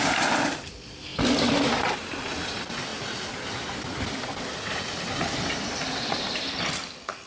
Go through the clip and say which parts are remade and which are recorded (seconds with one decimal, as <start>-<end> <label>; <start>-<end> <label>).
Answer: 0.0-7.3 recorded